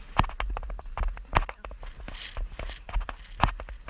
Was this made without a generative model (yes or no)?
yes